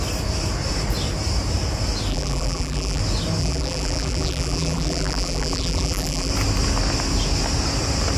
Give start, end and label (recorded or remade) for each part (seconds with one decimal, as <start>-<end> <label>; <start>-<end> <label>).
0.0-2.1 recorded; 2.1-3.0 remade; 3.0-3.4 recorded; 3.4-6.3 remade; 6.3-8.2 recorded